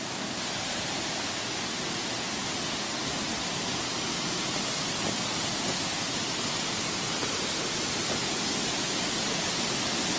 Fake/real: real